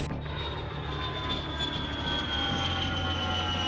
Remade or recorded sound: recorded